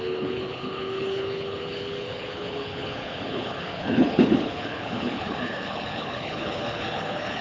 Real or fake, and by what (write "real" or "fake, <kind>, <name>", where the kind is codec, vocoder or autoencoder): fake, codec, HILCodec